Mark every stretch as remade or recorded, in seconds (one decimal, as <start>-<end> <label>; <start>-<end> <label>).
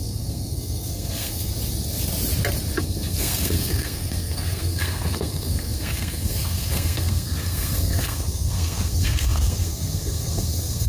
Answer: 0.0-1.5 remade; 1.5-2.8 recorded; 2.8-10.9 remade